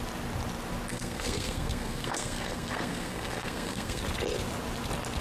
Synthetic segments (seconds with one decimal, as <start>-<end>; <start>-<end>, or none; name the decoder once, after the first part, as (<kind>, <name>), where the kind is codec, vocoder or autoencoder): 0.9-4.0 (codec, SNAC)